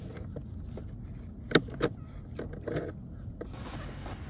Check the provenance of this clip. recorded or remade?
recorded